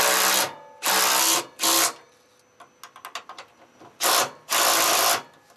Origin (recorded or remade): recorded